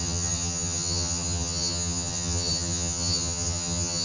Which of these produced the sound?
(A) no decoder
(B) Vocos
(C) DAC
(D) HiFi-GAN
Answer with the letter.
D